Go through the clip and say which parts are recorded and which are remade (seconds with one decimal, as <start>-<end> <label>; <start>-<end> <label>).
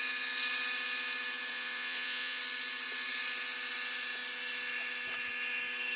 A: 0.0-1.5 recorded; 1.5-2.4 remade; 2.4-6.0 recorded